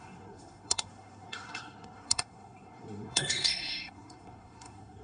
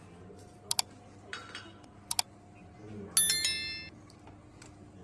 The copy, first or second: first